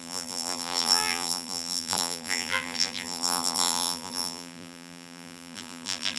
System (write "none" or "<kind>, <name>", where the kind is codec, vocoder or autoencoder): vocoder, BigVGAN v2